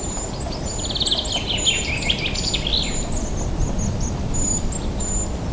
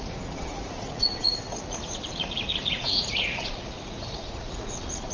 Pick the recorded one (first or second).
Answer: first